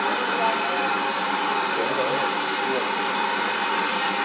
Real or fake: real